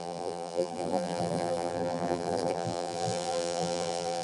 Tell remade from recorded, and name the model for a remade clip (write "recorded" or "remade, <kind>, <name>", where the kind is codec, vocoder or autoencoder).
remade, vocoder, BigVGAN v2